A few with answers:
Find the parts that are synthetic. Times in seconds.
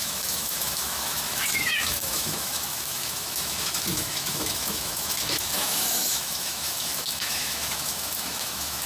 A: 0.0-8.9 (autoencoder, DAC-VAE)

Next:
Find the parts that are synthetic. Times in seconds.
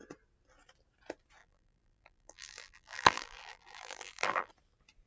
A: 1.4-4.5 (vocoder, BigVGAN v2)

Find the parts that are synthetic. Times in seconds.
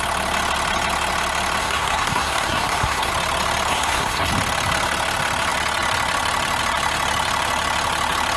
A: 1.6-3.1 (codec, SNAC); 3.7-4.3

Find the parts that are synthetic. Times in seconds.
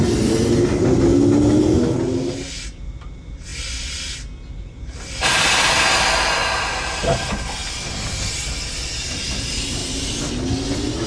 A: none